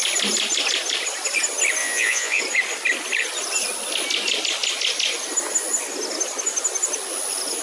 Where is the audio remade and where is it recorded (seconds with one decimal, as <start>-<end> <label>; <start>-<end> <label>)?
0.0-1.8 recorded; 1.8-2.4 remade; 2.4-7.6 recorded